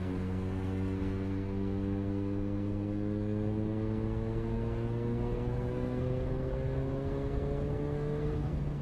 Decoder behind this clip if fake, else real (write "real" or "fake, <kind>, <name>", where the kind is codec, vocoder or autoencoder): fake, codec, SNAC